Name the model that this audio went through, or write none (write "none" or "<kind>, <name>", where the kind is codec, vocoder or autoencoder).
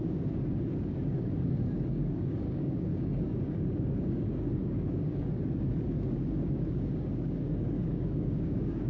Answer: codec, DAC